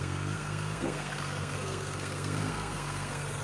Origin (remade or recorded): remade